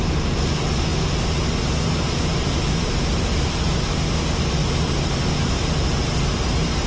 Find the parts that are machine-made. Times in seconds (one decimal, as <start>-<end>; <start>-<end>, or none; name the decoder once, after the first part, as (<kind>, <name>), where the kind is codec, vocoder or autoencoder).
0.0-0.9 (vocoder, BigVGAN v2); 2.3-6.9